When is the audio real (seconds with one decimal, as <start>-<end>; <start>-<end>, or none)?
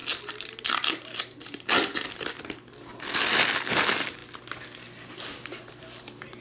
0.0-6.4